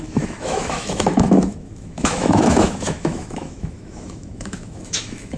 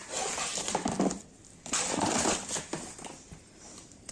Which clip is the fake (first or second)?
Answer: first